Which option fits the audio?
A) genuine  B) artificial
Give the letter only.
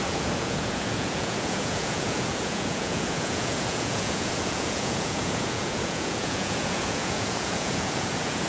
B